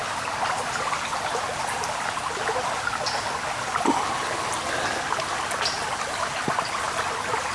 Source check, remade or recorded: recorded